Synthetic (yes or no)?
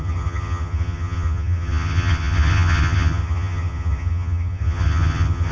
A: yes